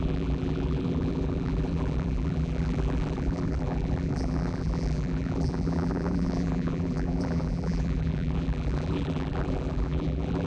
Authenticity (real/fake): fake